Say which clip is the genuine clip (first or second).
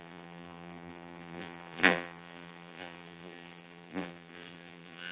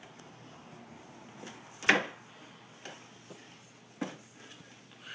second